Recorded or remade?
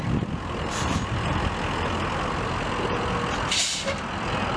recorded